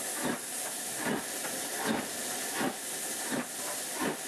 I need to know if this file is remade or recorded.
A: recorded